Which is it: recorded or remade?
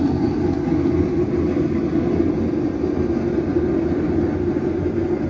recorded